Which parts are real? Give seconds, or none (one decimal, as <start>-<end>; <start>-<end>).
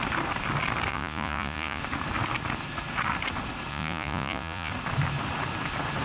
0.0-0.9; 1.8-3.7; 4.7-6.0